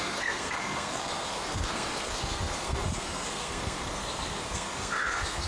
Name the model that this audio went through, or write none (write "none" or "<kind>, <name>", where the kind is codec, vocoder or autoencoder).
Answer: codec, SNAC